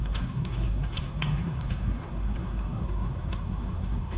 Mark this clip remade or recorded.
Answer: remade